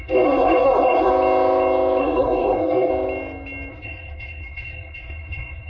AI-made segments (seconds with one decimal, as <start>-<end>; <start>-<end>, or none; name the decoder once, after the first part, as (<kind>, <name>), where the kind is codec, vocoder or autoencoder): 0.0-1.1 (codec, SNAC); 2.0-2.9; 3.7-5.7

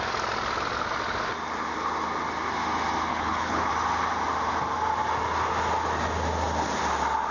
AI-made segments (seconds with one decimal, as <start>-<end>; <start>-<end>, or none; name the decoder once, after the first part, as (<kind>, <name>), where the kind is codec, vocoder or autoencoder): 3.1-3.7 (codec, HILCodec)

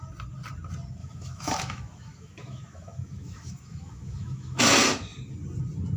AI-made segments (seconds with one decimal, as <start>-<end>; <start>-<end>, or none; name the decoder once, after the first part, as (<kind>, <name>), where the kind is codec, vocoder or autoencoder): 1.0-4.6 (autoencoder, DAC-VAE)

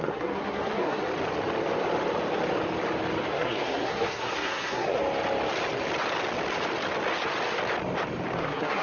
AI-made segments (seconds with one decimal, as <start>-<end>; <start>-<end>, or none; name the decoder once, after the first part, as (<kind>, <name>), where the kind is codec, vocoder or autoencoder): 0.0-1.0 (codec, SNAC); 3.3-5.0; 8.4-8.8

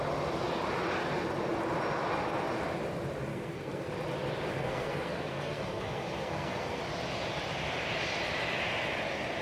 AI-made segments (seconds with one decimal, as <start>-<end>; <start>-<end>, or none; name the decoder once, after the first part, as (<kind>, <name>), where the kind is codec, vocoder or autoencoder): 3.3-3.9 (codec, SNAC); 4.5-6.8

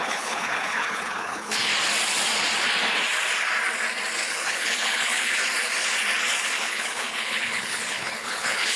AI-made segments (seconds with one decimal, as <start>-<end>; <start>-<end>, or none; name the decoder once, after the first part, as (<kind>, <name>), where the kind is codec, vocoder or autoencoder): 0.0-1.7 (codec, HILCodec); 4.3-5.4; 6.6-8.8